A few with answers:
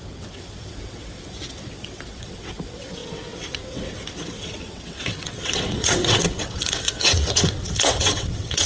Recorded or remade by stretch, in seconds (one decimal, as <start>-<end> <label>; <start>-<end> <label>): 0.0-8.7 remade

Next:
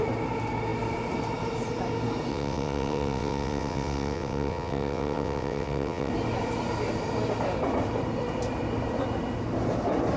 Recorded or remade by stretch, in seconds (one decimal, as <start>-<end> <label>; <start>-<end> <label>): 0.0-2.3 recorded; 2.3-6.1 remade; 6.1-10.2 recorded

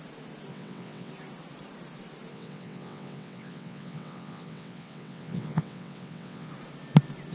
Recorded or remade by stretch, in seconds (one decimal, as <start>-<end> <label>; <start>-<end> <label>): 0.0-0.5 recorded; 0.5-1.1 remade; 1.1-2.3 recorded; 2.3-6.5 remade; 6.5-7.3 recorded

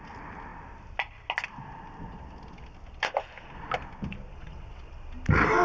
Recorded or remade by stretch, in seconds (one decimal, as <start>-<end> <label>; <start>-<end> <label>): 0.0-4.3 recorded; 4.3-4.9 remade; 4.9-5.6 recorded